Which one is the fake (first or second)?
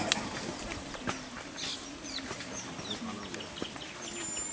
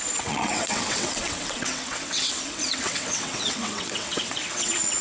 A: second